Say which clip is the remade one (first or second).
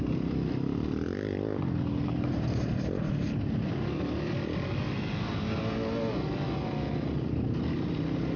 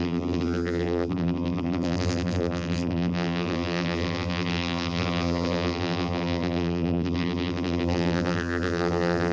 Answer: second